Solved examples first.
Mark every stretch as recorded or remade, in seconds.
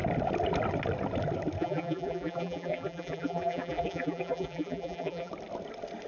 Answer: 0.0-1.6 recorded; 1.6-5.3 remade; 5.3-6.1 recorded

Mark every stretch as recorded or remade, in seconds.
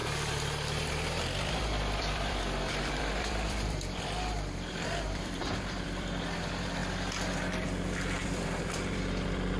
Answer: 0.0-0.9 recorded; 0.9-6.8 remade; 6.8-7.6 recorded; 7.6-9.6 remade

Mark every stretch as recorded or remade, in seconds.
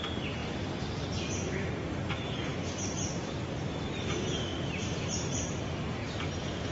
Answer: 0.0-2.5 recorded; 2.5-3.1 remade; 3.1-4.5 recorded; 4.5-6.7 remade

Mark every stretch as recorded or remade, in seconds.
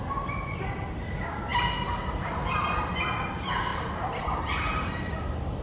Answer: 0.0-3.7 recorded; 3.7-5.1 remade; 5.1-5.6 recorded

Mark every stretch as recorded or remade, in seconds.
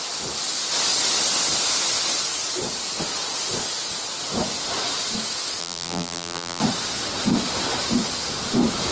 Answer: 0.0-5.6 recorded; 5.6-6.6 remade; 6.6-8.9 recorded